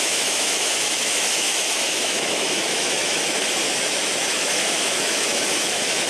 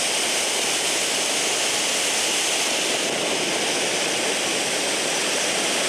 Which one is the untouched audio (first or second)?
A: second